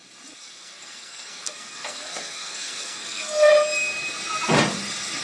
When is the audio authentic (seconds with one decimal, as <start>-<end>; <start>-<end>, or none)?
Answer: 0.0-0.4; 3.5-5.2